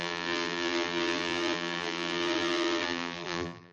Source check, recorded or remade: remade